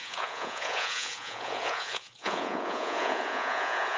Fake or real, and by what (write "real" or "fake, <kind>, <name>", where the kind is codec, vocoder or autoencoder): fake, vocoder, Vocos